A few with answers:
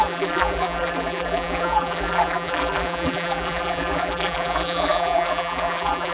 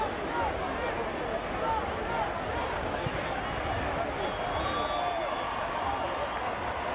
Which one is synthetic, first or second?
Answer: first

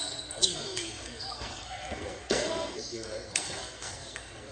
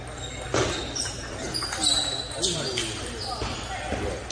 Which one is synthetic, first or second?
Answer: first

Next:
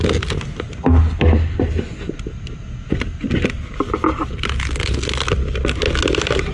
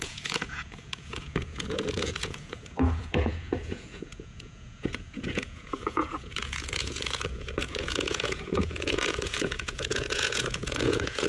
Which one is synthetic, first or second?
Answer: second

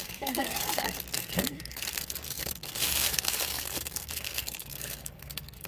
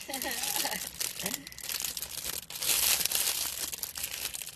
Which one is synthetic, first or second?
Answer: first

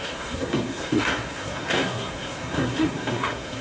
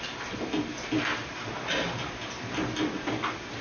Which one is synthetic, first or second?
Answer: first